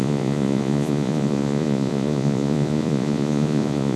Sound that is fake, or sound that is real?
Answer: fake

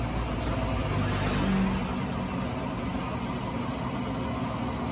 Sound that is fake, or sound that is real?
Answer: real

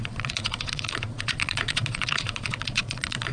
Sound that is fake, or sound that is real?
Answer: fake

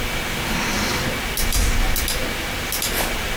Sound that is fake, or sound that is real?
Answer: real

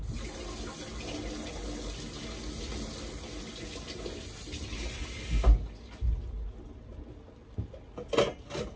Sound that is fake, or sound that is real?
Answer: real